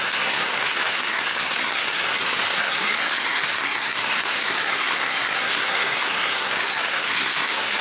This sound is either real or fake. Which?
fake